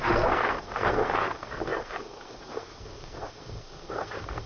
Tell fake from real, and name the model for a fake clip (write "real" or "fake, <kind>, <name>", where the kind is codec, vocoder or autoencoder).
fake, codec, SNAC